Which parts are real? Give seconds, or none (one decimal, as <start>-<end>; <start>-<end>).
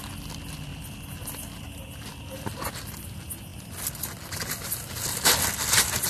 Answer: 0.0-6.1